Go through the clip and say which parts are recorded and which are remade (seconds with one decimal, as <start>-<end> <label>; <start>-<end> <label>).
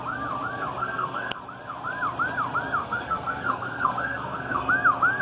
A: 0.0-0.8 recorded; 0.8-1.4 remade; 1.4-2.8 recorded; 2.8-4.7 remade; 4.7-5.2 recorded